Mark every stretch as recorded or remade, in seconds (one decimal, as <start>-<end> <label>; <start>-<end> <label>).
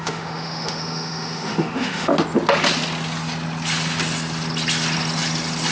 0.0-2.1 remade; 2.1-5.7 recorded